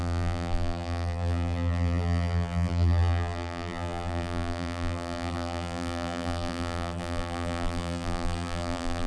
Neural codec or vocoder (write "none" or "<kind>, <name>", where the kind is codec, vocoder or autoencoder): vocoder, BigVGAN v2